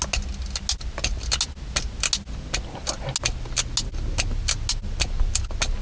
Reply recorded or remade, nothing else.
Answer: recorded